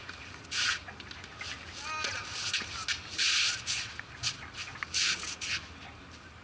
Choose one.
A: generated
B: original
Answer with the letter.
B